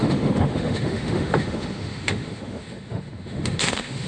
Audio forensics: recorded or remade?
remade